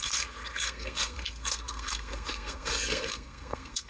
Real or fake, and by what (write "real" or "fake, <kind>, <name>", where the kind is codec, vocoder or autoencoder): fake, codec, SNAC